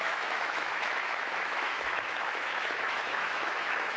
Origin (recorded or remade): remade